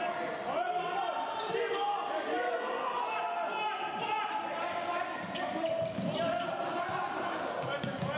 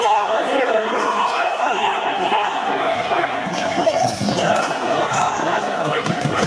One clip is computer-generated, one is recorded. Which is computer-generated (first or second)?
second